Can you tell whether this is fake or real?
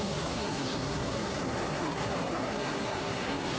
fake